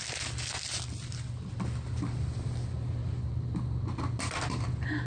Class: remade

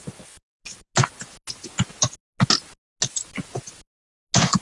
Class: recorded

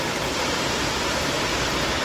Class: recorded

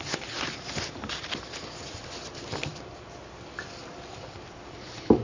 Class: remade